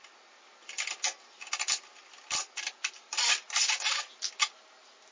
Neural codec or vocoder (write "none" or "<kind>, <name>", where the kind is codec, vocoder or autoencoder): none